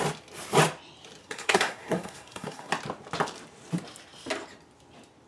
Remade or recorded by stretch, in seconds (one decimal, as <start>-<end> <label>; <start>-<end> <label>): 0.0-1.2 recorded; 1.2-2.7 remade; 2.7-5.3 recorded